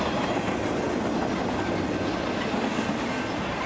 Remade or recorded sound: recorded